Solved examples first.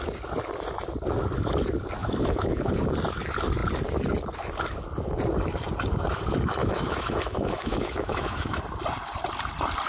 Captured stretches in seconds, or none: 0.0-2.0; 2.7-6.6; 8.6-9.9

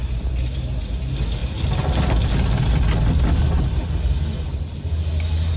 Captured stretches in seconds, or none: 0.0-5.6

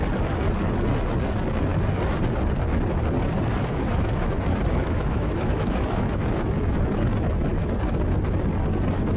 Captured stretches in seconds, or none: 0.0-3.5; 6.2-9.2

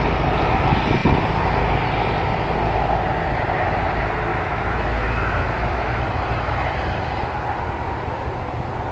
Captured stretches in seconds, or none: 0.0-4.3; 6.0-8.9

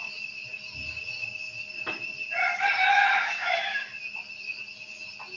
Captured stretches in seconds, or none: 0.0-3.1; 3.9-5.4

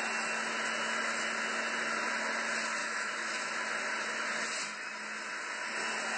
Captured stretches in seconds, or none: 0.0-2.8; 3.5-6.2